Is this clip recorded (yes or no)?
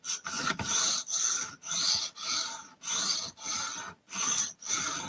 yes